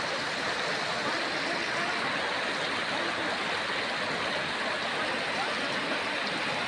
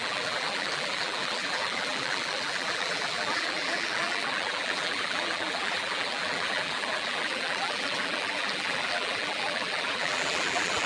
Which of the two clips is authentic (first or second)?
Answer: first